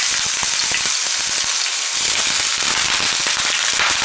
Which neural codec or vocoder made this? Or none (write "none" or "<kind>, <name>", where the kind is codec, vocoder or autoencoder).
none